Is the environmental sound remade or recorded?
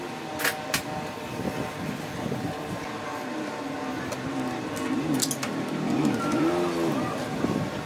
recorded